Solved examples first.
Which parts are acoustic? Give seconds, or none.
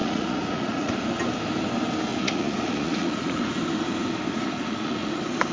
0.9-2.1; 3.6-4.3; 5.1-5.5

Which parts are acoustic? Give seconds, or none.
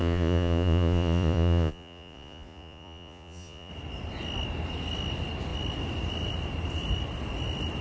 3.7-7.8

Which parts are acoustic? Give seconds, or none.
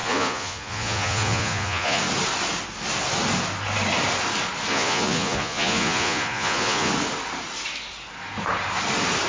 2.0-4.7; 6.9-9.3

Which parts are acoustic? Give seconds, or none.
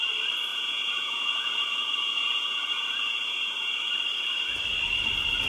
0.0-0.5; 3.8-5.5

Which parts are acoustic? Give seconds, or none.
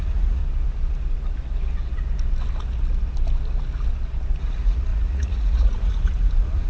0.4-4.4